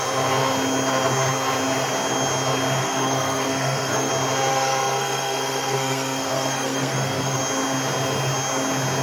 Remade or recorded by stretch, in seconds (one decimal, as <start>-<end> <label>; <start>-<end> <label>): 0.0-2.8 recorded; 2.8-4.1 remade; 4.1-4.5 recorded; 4.5-7.4 remade; 7.4-9.0 recorded